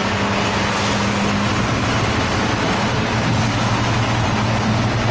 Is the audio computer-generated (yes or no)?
no